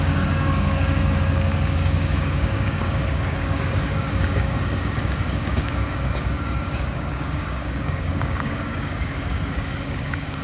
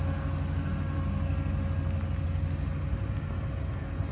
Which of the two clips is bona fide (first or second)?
second